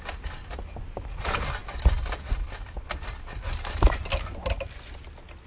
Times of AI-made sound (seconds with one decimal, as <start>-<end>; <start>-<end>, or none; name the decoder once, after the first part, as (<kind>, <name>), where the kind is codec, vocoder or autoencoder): none